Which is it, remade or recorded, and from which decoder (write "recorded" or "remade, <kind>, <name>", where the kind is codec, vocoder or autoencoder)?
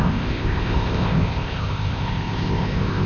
remade, codec, ZipCodec